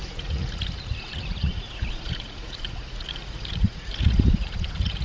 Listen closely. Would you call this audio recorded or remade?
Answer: remade